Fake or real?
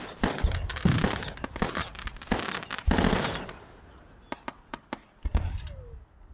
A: real